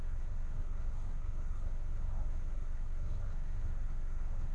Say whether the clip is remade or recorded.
remade